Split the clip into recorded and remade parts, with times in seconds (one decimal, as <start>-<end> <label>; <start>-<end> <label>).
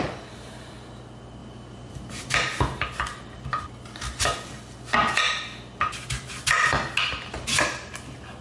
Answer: 0.0-1.4 recorded; 1.4-2.3 remade; 2.3-8.4 recorded